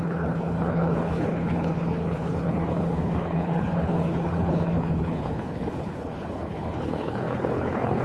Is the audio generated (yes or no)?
yes